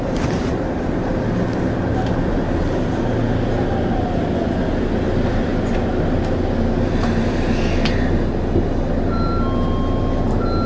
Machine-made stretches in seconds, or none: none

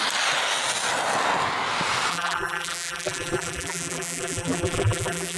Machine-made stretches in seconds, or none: 2.1-5.4 (vocoder, BigVGAN v2)

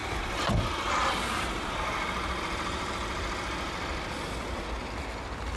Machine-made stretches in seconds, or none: 0.0-0.6 (vocoder, BigVGAN v2); 1.0-4.4